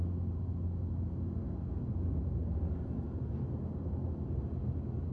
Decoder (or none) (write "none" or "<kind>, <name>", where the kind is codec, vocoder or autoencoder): none